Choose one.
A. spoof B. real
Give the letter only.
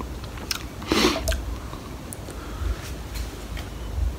B